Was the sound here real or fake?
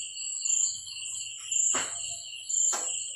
real